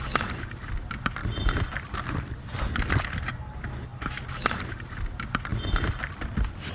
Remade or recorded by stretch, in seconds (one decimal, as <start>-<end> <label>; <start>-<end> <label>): 0.0-1.2 recorded; 1.2-3.5 remade; 3.5-3.9 recorded; 3.9-4.7 remade; 4.7-5.5 recorded; 5.5-6.7 remade